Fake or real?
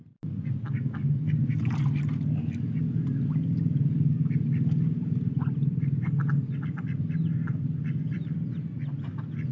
real